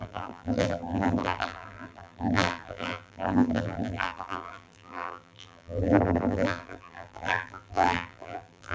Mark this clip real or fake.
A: fake